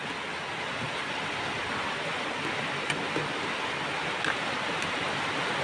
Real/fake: real